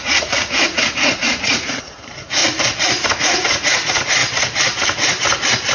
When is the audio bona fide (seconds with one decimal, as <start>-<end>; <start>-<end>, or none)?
2.4-3.1; 4.2-5.7